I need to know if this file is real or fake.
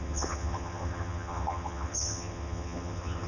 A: fake